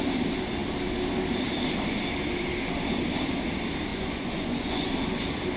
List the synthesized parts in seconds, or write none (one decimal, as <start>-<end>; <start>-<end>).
3.9-4.9